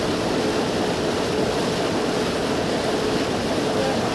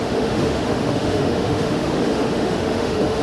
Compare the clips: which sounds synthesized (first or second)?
second